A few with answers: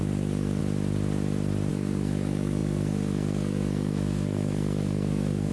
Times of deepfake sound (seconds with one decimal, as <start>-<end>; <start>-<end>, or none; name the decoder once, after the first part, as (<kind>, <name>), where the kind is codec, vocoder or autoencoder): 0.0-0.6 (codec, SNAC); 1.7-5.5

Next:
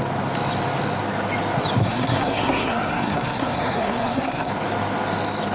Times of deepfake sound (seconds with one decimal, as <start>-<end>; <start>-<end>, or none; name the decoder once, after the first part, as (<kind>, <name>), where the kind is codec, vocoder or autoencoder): 1.8-4.5 (codec, SNAC)

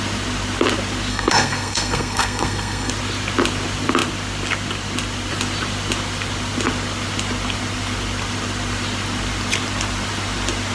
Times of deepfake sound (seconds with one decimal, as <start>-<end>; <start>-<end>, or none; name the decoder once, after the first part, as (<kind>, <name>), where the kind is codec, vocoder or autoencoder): 1.1-2.9 (codec, SNAC)

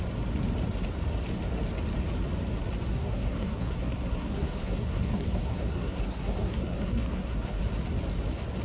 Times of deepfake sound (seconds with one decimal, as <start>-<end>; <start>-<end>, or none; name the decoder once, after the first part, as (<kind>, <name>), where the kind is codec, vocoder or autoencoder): 2.9-7.6 (codec, SNAC)

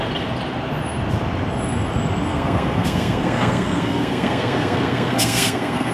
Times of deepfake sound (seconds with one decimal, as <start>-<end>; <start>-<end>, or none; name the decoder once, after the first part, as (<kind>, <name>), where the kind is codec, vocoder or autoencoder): 2.3-5.9 (codec, SNAC)

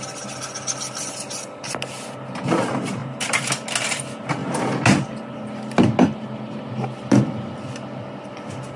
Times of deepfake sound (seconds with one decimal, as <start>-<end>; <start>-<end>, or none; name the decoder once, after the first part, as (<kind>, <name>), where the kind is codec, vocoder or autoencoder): none